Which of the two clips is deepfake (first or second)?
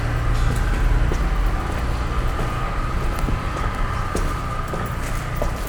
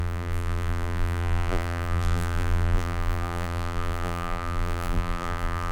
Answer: second